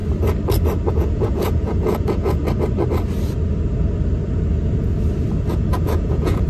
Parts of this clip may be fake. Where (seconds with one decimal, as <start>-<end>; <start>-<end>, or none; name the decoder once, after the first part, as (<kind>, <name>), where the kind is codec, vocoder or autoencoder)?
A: 0.9-2.4 (vocoder, Vocos); 5.5-6.5